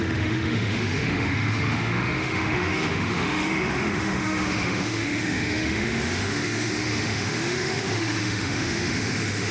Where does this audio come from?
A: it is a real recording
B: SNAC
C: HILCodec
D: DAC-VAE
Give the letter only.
D